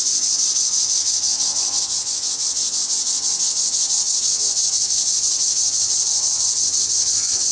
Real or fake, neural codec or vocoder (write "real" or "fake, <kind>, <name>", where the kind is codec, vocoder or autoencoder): fake, vocoder, WaveNeXt